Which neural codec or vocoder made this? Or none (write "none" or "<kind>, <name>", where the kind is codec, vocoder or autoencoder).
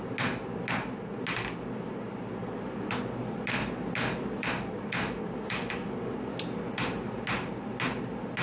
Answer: none